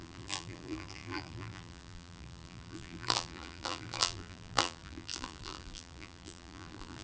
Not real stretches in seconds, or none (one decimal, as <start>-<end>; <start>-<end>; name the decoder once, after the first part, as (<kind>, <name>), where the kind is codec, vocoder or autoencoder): 0.0-7.0 (vocoder, BigVGAN v2)